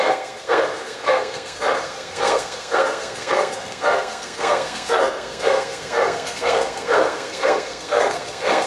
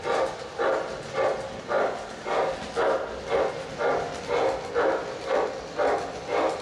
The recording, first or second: second